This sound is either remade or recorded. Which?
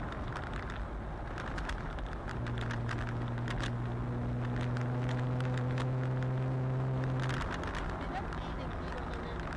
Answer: recorded